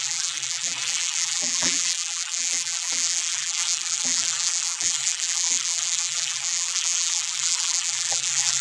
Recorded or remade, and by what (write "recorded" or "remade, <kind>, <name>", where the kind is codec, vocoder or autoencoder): remade, vocoder, BigVGAN v2